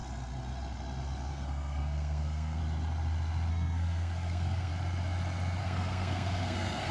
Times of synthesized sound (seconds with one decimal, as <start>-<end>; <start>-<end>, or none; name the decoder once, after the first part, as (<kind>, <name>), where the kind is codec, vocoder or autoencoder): 1.3-2.6 (codec, SNAC); 3.5-4.7; 5.6-6.9